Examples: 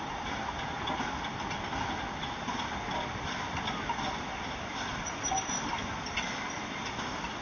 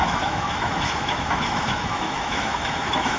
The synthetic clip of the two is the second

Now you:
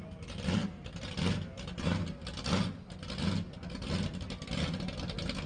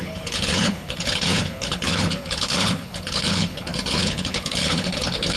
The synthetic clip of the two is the second